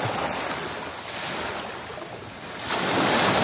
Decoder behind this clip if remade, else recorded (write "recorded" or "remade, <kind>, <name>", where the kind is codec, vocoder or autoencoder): recorded